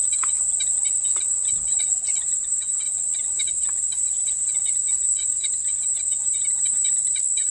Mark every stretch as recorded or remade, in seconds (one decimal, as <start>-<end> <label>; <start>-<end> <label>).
0.0-7.5 recorded